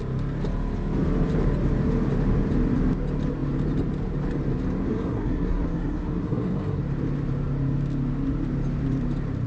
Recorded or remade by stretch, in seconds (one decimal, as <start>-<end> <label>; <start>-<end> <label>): 0.0-4.9 recorded; 4.9-6.8 remade; 6.8-9.5 recorded